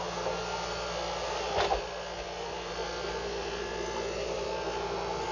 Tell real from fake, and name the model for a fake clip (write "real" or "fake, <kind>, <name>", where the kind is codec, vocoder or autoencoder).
real